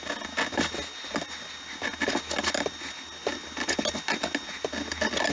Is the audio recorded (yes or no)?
yes